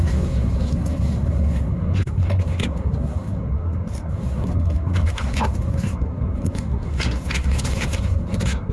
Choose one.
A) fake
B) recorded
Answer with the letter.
A